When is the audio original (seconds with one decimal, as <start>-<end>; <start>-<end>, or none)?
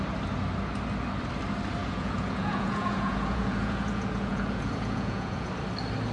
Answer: 0.0-1.8; 5.5-6.1